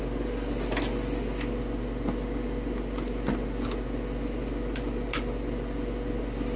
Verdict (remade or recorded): recorded